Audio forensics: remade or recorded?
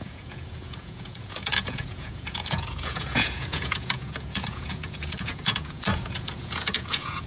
remade